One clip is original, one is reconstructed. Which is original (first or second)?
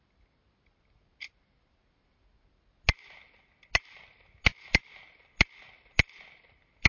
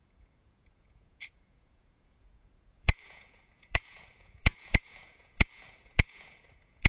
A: first